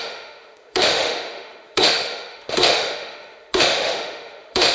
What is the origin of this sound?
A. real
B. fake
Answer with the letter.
B